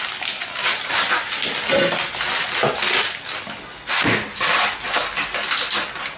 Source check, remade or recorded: recorded